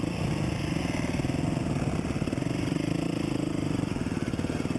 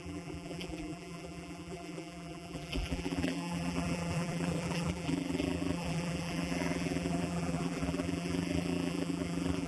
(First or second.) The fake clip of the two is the second